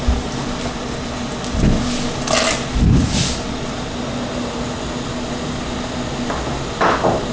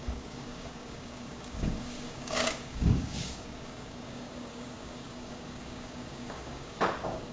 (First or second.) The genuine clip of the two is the first